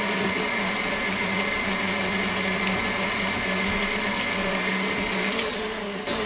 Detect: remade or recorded recorded